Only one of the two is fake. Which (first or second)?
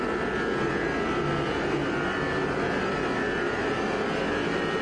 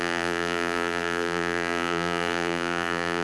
second